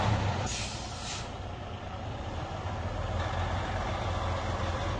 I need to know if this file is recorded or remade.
recorded